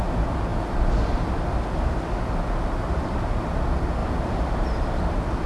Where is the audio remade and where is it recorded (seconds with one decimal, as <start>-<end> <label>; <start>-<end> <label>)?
0.0-4.0 recorded; 4.0-5.0 remade; 5.0-5.5 recorded